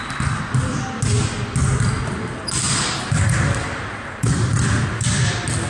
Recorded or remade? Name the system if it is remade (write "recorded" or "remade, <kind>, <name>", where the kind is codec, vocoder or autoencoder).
recorded